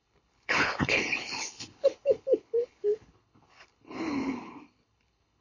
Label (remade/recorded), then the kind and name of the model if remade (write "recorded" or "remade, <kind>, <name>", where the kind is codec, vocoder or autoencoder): remade, codec, HILCodec